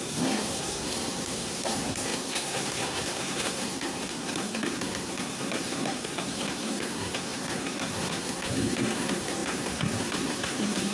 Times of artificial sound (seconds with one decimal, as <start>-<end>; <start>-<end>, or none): 0.0-10.9